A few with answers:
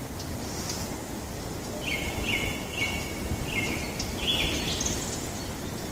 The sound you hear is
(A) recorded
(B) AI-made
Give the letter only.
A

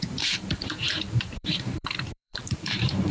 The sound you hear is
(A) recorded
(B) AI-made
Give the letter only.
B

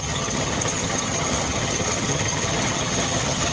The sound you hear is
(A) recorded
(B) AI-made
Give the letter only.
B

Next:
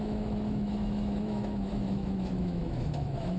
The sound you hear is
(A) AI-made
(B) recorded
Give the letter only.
A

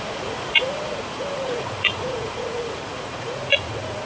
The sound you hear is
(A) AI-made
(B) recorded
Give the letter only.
A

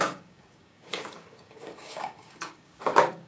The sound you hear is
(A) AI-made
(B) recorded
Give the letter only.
A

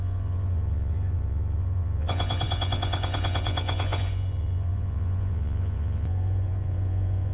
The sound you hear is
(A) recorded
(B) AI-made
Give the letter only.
B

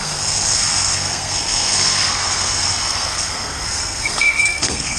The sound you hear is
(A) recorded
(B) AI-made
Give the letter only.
B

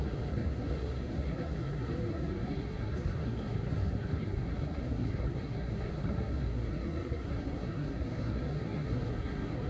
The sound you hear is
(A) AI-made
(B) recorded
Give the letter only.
A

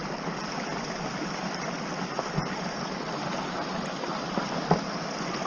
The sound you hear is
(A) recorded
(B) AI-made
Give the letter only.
A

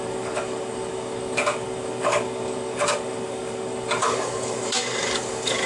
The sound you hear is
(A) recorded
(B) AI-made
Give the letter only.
B